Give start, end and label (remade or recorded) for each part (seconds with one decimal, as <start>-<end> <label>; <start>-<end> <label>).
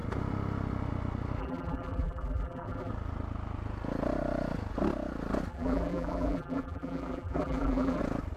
0.0-1.4 recorded; 1.4-2.9 remade; 2.9-5.5 recorded; 5.5-8.0 remade; 8.0-8.4 recorded